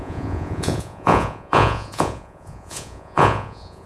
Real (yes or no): no